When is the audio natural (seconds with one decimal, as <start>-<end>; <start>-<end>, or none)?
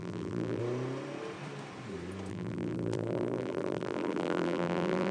0.6-2.3